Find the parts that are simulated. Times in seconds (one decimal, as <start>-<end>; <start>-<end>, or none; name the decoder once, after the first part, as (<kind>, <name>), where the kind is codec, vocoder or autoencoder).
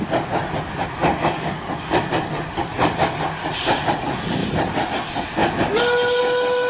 4.4-4.9 (vocoder, BigVGAN v2)